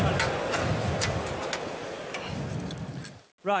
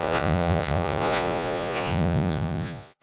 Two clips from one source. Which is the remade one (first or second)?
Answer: second